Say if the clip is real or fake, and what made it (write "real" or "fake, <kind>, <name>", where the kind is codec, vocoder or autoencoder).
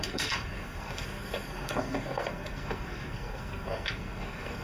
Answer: fake, codec, SNAC